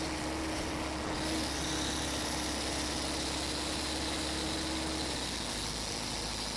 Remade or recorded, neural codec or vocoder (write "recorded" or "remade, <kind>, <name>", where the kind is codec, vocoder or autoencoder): recorded